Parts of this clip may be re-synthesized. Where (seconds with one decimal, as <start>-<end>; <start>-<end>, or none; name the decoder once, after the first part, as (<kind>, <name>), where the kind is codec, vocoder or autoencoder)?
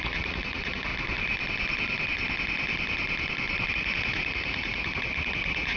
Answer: 0.0-0.9 (vocoder, Vocos); 3.7-5.8